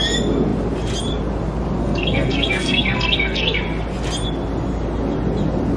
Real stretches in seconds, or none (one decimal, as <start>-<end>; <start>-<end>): 0.0-1.8; 3.6-5.8